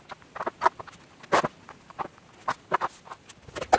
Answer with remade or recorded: recorded